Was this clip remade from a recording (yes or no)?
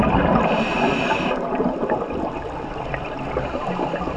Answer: no